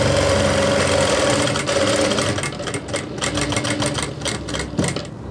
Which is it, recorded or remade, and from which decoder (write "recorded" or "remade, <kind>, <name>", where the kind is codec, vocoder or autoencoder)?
recorded